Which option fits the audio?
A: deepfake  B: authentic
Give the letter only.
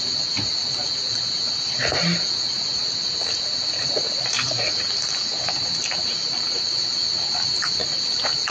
A